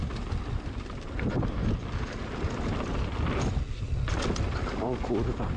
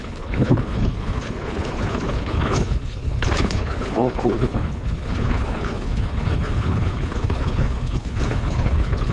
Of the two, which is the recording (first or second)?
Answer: first